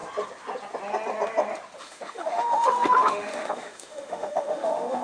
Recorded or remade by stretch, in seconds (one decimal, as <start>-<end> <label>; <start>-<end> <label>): 0.0-1.8 recorded; 1.8-5.0 remade